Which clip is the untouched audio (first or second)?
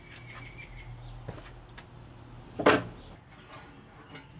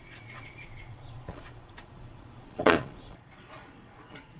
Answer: first